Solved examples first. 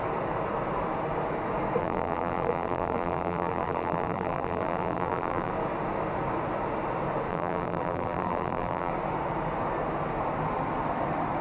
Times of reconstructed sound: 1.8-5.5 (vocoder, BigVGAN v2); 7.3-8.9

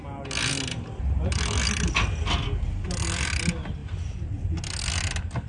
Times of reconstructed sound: none

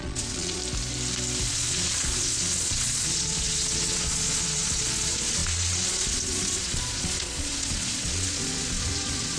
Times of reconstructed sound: 0.0-0.6 (vocoder, Vocos); 1.5-9.4

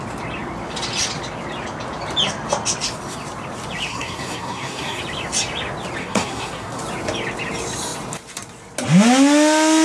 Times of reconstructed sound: 3.9-5.0 (codec, SNAC); 6.0-6.8